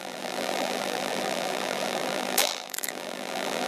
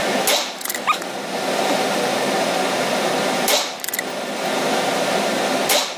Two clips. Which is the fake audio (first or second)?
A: first